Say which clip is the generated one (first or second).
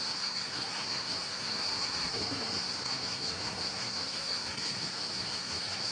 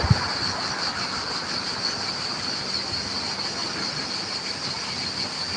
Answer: first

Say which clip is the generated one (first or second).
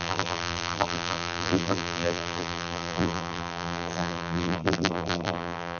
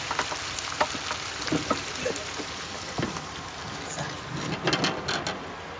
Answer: first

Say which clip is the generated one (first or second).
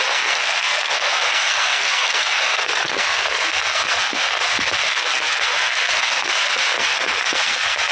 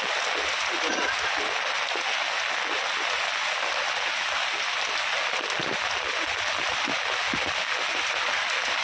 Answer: first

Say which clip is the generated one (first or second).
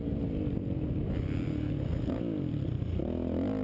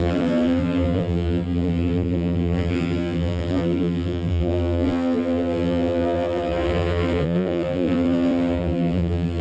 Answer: second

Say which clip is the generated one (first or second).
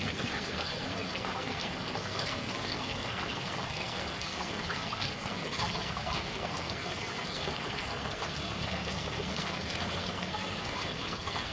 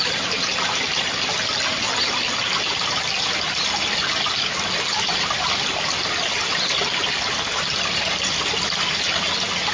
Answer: first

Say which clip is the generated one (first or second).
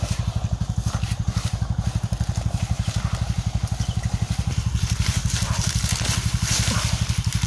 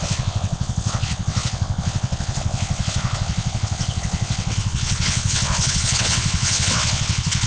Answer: second